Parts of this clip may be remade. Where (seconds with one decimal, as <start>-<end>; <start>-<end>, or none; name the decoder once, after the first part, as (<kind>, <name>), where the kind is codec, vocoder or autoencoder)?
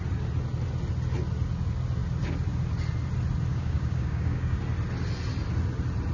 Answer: 3.5-4.6 (codec, DAC)